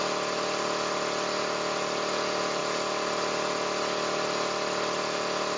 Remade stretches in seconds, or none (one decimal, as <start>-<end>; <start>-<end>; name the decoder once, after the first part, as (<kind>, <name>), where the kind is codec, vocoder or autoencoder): none